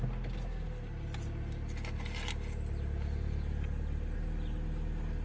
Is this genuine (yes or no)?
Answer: yes